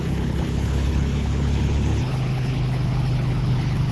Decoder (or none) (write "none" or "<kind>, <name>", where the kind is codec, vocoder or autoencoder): codec, HILCodec